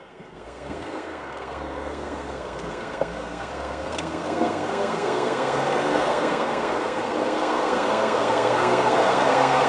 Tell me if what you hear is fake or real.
fake